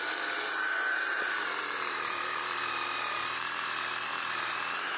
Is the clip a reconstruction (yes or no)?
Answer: yes